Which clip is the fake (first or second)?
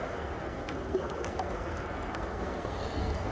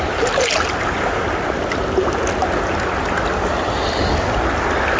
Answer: first